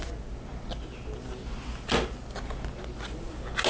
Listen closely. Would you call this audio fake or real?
real